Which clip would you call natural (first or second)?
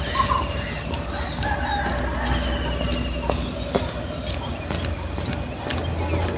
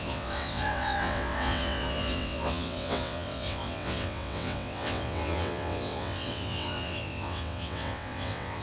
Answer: first